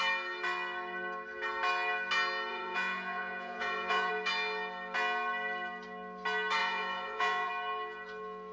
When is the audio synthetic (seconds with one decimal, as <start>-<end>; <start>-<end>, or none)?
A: 2.5-4.1; 6.6-7.5